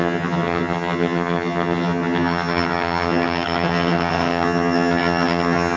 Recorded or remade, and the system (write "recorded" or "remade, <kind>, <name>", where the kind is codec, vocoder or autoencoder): remade, vocoder, HiFi-GAN